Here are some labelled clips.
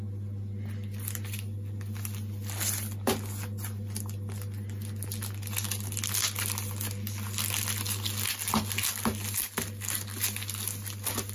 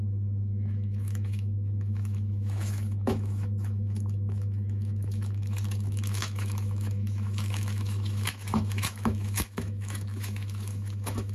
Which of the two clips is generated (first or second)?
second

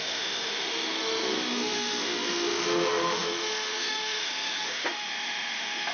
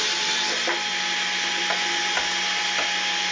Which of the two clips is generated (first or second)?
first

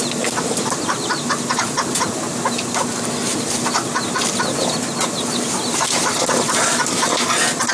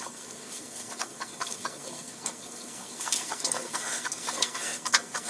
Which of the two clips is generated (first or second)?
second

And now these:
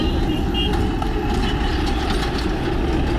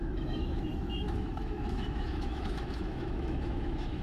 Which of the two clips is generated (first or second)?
second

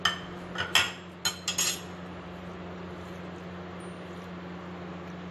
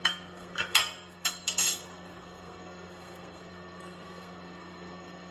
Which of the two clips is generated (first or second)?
second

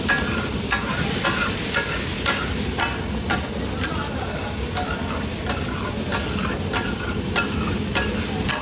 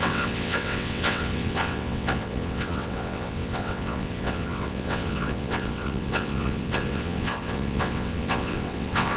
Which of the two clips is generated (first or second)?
second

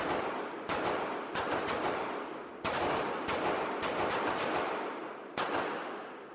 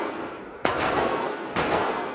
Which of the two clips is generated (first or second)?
second